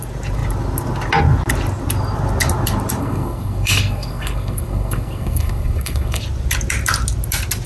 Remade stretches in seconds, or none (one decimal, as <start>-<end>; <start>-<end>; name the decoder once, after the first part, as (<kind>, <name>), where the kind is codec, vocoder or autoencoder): 3.0-6.2 (codec, SNAC)